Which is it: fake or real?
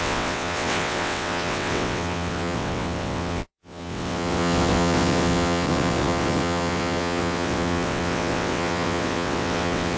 fake